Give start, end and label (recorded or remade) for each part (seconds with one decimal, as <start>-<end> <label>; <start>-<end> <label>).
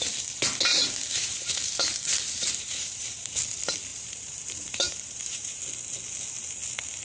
0.0-0.7 recorded; 0.7-3.3 remade; 3.3-3.9 recorded; 3.9-5.6 remade; 5.6-7.0 recorded